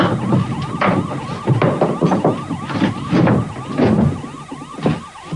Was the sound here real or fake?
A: real